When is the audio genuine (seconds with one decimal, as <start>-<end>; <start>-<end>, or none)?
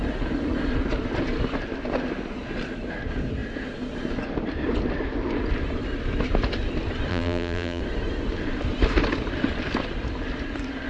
0.0-7.1; 7.8-10.9